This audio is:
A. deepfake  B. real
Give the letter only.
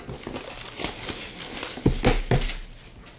B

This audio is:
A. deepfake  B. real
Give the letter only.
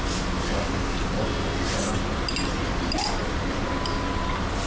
B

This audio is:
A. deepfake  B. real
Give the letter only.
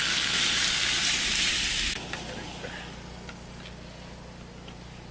B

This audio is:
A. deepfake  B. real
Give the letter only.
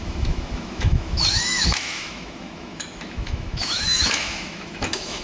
A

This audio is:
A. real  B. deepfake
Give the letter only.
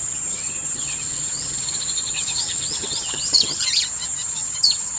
B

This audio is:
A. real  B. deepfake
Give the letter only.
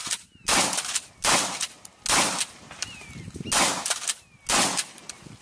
A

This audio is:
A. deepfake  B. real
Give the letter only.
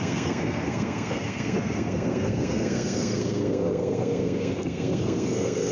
A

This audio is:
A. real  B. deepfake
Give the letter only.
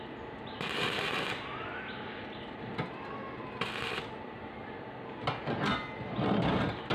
A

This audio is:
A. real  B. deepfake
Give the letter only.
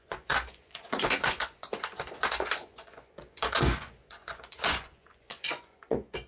B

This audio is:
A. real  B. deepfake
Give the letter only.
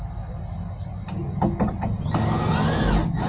A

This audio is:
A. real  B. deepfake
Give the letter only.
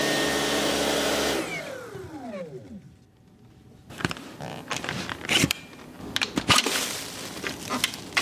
A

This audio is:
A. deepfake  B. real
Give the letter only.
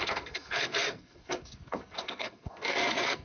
A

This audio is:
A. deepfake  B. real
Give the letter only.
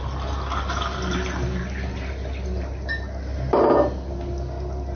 B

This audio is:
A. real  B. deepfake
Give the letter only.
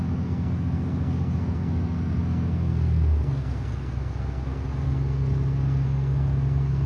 B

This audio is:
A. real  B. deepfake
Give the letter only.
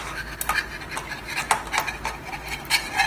A